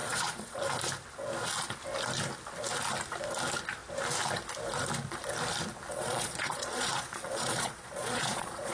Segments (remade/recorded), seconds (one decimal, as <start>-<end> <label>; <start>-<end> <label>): 0.0-0.6 remade; 0.6-5.9 recorded; 5.9-8.7 remade